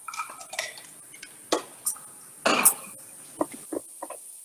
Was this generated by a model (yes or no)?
no